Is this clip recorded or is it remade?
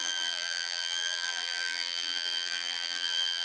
remade